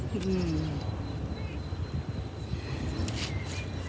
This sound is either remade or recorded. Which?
recorded